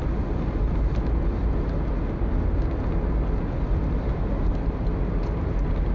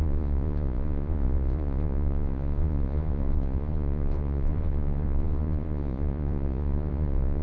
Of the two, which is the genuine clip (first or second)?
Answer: first